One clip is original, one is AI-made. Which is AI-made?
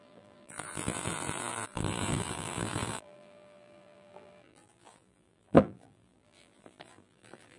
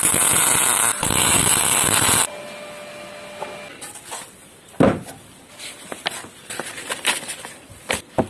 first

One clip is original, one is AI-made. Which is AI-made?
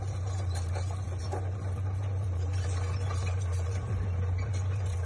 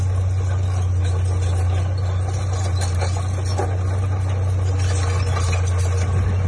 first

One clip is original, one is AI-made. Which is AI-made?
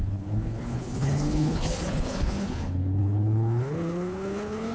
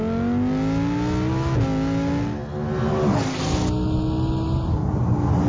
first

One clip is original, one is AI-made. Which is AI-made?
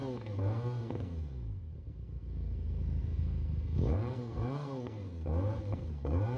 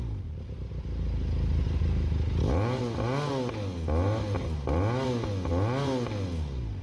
first